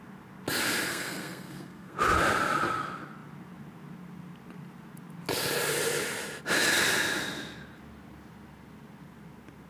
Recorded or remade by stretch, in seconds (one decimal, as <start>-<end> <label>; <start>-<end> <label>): 0.0-0.9 recorded; 0.9-2.0 remade; 2.0-9.7 recorded